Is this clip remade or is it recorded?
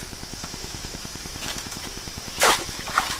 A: remade